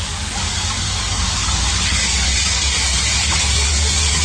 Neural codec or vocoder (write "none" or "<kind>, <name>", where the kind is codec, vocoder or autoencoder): codec, DAC